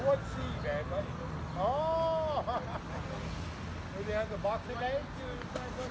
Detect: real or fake real